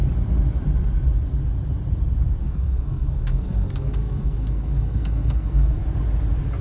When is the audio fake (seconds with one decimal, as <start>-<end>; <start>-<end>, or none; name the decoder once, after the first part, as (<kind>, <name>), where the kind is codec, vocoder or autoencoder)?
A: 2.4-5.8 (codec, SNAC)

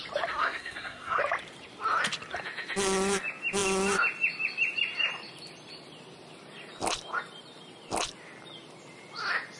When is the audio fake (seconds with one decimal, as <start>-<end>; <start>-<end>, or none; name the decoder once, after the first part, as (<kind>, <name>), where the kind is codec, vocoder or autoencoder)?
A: 0.4-1.2 (codec, SNAC)

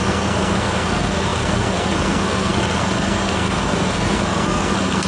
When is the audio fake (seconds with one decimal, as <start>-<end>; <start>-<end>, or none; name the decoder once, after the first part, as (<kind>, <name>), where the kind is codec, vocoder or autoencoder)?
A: 0.0-5.1 (codec, SNAC)